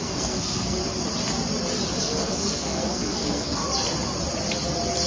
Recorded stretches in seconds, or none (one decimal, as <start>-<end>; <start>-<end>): 0.8-2.0; 3.6-5.1